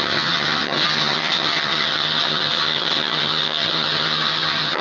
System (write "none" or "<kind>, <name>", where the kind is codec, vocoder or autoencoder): vocoder, HiFi-GAN